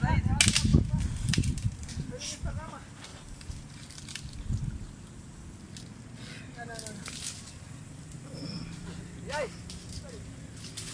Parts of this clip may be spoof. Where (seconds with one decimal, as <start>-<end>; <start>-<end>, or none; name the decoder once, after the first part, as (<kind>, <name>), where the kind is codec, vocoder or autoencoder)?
0.7-1.9 (vocoder, BigVGAN v2); 3.1-4.0